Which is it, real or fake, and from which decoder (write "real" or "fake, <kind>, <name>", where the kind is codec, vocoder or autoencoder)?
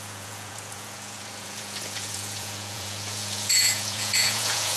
fake, vocoder, Vocos